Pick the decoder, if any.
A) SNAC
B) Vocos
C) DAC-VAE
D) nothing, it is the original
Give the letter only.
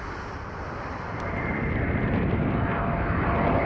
D